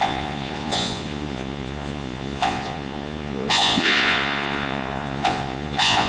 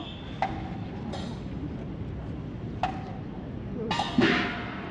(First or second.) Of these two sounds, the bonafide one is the second